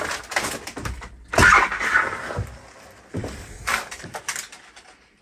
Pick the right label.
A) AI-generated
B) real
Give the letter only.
B